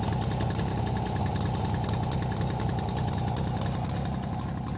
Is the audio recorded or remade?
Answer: recorded